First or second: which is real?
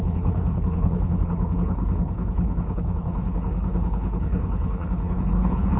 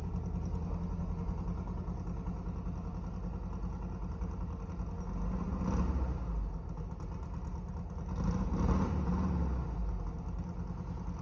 second